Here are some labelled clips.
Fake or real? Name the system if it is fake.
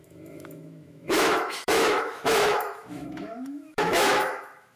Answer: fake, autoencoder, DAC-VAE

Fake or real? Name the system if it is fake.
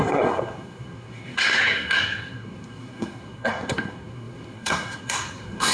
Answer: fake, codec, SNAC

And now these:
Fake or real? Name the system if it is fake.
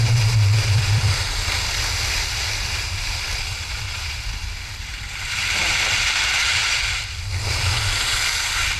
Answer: fake, vocoder, BigVGAN v2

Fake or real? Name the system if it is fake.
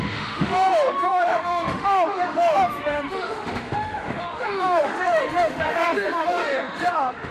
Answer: fake, autoencoder, DAC-VAE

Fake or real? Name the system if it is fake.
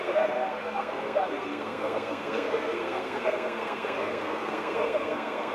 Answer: fake, codec, SNAC